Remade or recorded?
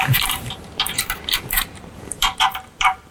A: remade